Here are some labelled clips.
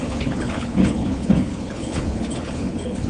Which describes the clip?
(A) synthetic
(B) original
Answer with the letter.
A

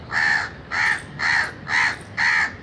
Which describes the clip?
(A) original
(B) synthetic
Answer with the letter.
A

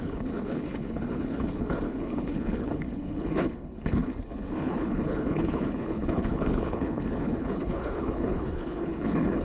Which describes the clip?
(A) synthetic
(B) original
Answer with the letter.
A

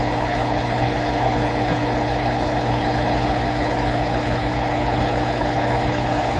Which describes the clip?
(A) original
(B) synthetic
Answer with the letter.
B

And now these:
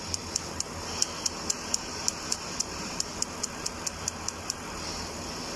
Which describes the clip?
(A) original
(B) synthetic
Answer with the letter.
A